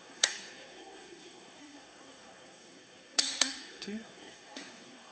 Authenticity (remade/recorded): remade